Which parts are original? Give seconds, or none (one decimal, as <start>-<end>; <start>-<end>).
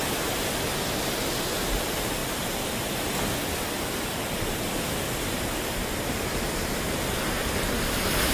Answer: 0.0-8.3